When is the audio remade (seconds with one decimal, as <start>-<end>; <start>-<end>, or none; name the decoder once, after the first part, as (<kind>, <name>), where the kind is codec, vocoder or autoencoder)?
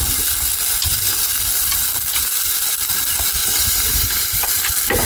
3.4-4.1 (vocoder, BigVGAN v2)